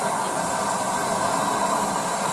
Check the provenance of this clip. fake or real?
fake